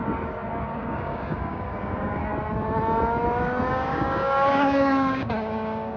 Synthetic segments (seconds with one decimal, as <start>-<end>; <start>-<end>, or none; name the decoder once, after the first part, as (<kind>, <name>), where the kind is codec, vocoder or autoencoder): 0.5-2.2 (codec, DAC); 3.7-6.0